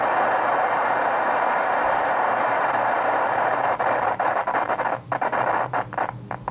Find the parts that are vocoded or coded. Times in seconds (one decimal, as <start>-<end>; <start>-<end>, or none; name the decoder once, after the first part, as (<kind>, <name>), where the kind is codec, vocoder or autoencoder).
0.5-4.4 (vocoder, BigVGAN v2)